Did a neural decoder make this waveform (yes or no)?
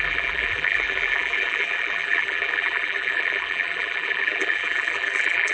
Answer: yes